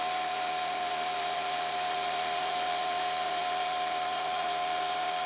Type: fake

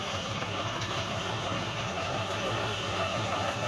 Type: fake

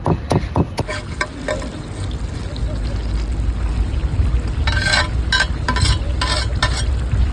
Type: real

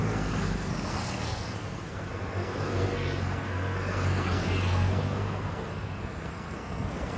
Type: fake